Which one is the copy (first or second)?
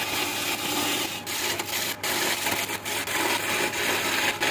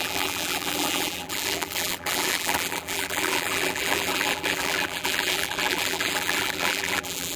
second